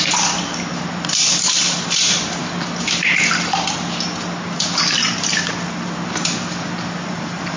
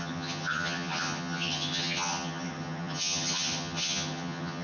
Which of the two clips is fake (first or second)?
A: second